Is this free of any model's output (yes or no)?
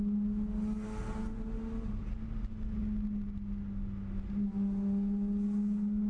yes